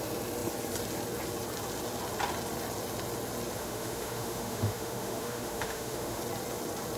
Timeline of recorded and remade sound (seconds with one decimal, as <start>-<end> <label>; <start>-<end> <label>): 0.0-3.6 recorded; 3.6-6.2 remade; 6.2-7.0 recorded